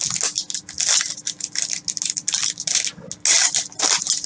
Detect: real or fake real